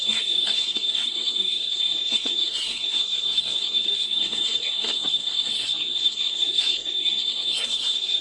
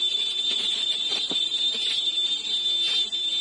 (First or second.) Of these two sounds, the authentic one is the second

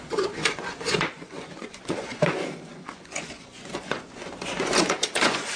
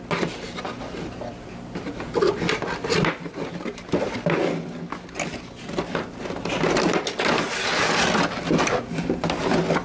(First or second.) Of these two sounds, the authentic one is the second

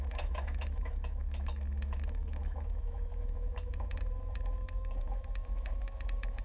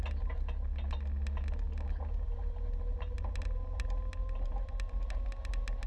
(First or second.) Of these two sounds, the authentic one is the second